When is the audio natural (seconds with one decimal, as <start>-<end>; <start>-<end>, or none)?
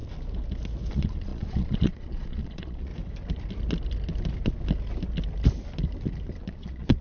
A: 0.0-0.9; 2.9-6.4